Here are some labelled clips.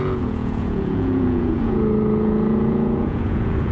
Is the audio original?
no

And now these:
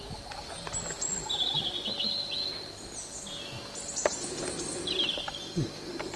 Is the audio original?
yes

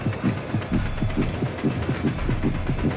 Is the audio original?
yes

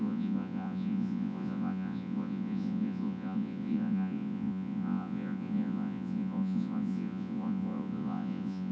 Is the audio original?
no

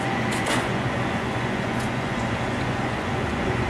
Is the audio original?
no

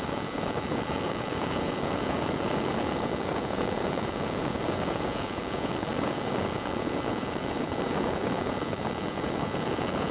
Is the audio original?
no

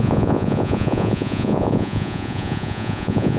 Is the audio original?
no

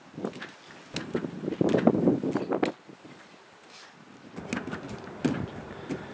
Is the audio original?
yes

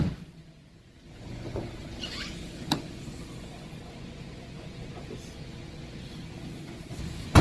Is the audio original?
no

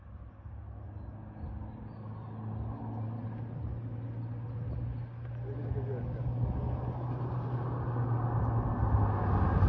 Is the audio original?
yes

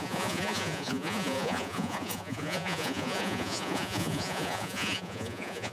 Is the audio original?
no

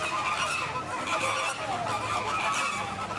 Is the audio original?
yes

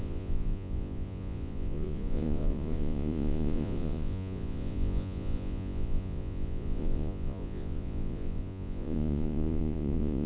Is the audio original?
no